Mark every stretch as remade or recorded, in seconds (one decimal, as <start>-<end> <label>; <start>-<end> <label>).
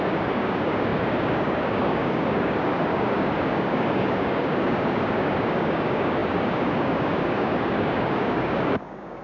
0.0-9.2 remade